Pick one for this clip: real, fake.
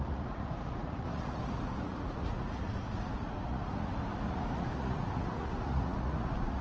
fake